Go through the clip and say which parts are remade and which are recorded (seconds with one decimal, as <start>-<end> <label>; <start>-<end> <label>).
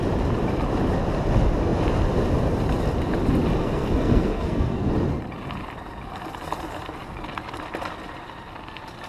0.0-3.6 recorded; 3.6-4.9 remade; 4.9-9.1 recorded